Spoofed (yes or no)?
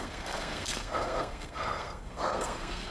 yes